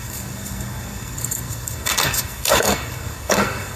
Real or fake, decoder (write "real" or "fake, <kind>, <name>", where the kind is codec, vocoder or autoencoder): fake, codec, SNAC